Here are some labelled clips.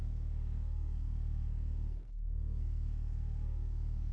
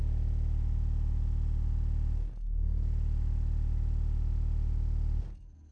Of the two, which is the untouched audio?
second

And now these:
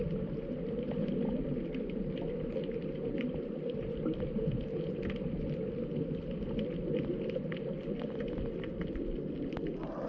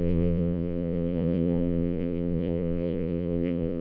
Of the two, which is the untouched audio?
first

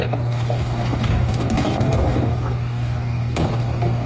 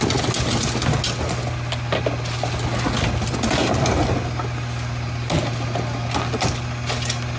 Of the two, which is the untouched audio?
second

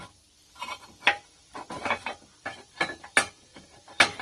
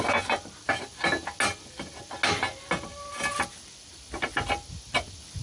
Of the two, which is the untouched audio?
second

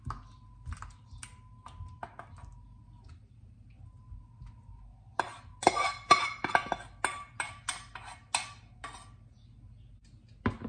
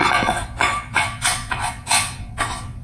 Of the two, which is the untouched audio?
first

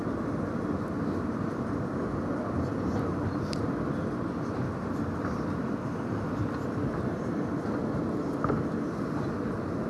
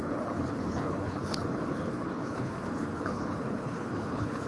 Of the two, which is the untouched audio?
first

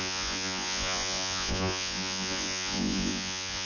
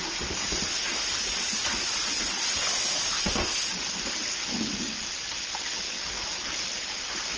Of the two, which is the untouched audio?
second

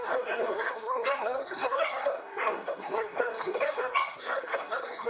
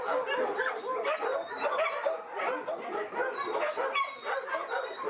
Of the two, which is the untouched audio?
second